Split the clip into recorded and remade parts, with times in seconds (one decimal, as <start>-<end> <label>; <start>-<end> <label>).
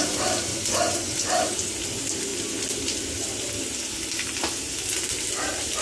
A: 0.0-0.5 recorded; 0.5-1.5 remade; 1.5-5.8 recorded